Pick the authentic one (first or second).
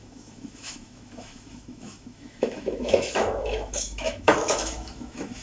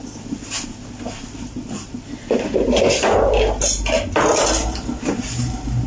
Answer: second